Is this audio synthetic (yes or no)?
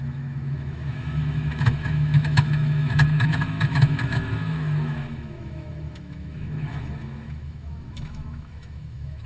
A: yes